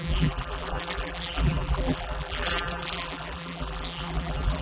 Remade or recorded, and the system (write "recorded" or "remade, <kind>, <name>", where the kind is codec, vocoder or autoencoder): remade, vocoder, BigVGAN v2